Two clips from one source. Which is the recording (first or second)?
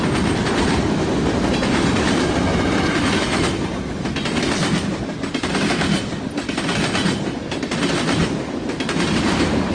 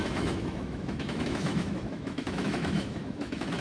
first